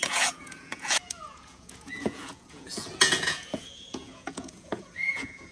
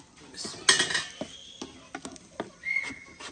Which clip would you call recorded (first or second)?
second